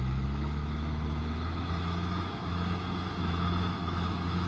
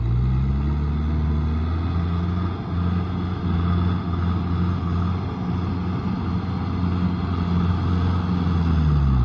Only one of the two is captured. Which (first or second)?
second